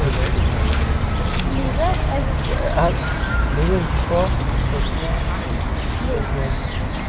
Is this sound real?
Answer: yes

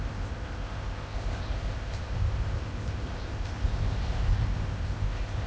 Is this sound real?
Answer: no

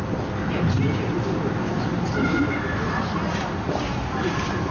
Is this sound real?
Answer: yes